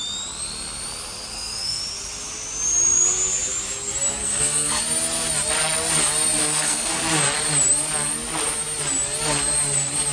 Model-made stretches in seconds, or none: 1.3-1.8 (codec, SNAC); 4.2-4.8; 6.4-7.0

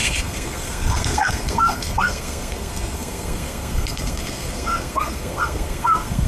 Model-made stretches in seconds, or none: 0.0-6.3 (codec, SNAC)

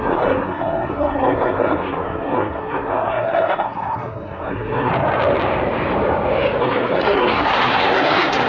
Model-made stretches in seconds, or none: 0.0-4.9 (codec, SNAC); 6.6-8.5